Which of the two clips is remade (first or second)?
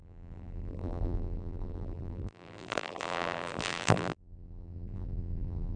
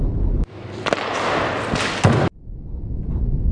first